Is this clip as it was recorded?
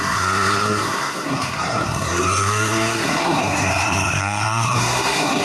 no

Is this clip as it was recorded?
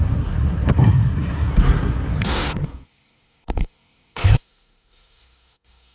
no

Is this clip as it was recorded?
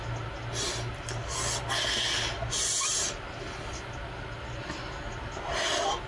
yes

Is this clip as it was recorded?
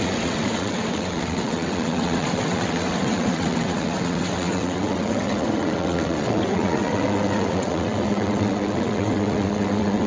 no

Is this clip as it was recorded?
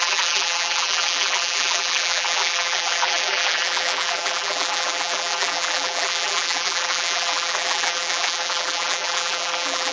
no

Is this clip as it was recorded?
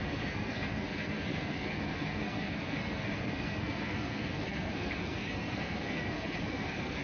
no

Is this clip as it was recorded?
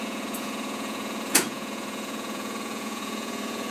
no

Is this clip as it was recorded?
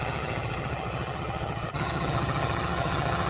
no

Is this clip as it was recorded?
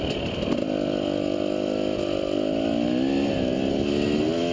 yes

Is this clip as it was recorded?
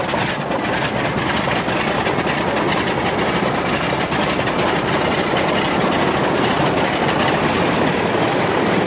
yes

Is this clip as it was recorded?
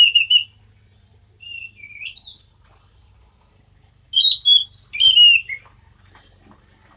yes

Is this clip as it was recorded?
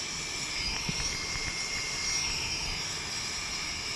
yes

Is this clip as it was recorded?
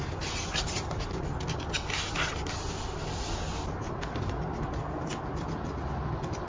yes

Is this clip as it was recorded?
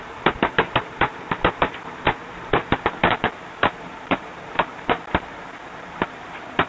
no